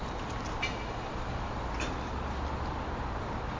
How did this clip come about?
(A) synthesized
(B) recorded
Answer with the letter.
B